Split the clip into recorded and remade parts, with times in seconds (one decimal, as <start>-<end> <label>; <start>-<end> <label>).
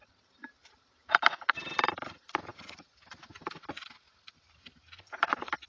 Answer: 0.0-0.6 recorded; 0.6-1.5 remade; 1.5-5.7 recorded